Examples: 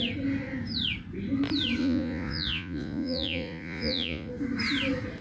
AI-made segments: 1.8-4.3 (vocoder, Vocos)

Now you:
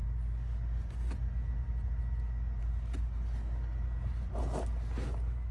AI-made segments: none

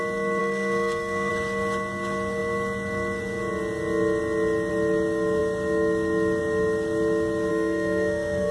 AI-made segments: 0.4-1.3 (codec, SNAC); 7.5-8.5